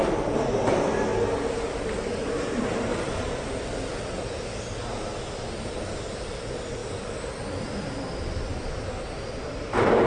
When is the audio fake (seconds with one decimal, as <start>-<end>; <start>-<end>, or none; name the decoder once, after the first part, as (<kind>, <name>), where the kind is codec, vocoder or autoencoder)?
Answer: 6.8-7.3 (vocoder, BigVGAN v2); 8.5-10.1